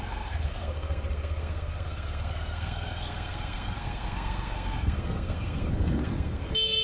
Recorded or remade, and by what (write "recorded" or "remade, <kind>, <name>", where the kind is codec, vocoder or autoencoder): remade, codec, SNAC